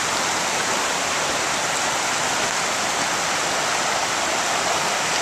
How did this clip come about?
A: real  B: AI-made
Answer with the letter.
B